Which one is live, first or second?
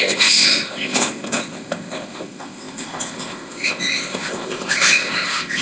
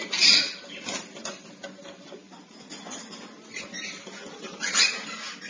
second